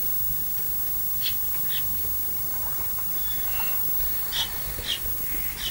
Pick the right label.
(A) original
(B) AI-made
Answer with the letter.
A